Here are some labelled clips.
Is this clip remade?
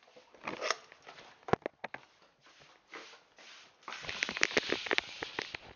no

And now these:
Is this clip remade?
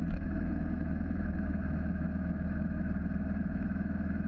yes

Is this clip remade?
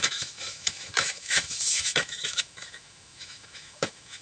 yes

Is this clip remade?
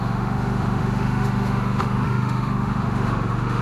yes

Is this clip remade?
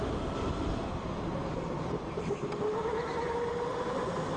no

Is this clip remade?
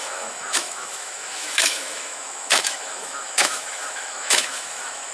yes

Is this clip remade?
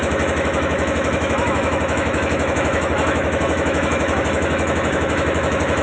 yes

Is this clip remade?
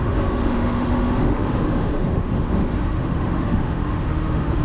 yes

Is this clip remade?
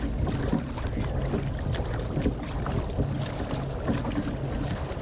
no